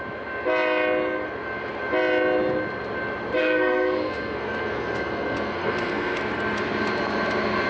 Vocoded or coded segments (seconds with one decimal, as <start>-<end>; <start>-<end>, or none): 3.4-6.2